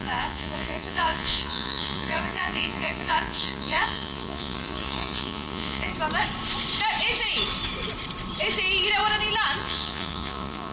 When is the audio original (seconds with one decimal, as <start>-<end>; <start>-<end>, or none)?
5.9-9.6